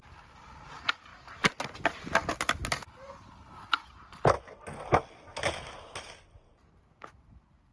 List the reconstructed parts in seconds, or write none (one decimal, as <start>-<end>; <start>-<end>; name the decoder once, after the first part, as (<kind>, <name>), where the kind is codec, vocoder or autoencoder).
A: none